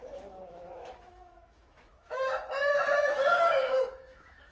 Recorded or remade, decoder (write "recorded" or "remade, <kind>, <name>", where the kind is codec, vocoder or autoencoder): remade, autoencoder, DAC-VAE